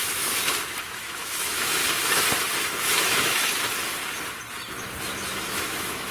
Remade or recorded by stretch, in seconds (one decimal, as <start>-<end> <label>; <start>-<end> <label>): 0.0-1.8 remade; 1.8-2.8 recorded; 2.8-3.5 remade; 3.5-5.1 recorded; 5.1-6.1 remade